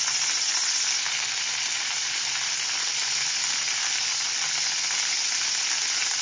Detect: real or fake real